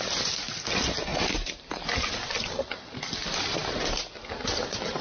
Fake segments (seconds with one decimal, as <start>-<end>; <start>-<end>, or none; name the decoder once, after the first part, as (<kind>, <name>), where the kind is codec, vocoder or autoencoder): none